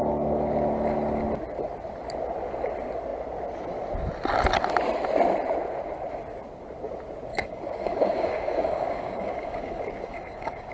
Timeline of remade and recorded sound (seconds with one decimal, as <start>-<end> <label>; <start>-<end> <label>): 0.0-7.3 recorded; 7.3-10.7 remade